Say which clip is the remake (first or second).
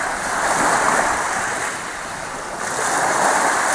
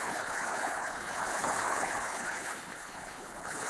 second